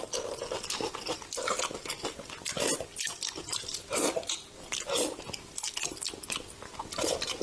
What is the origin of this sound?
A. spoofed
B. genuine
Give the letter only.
B